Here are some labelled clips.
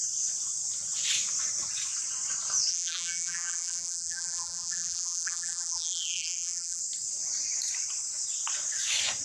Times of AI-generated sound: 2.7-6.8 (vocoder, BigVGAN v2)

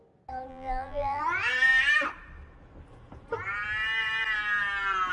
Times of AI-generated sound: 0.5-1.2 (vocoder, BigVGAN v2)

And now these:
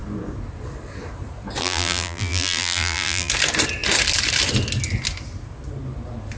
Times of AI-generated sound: 1.6-3.3 (vocoder, BigVGAN v2)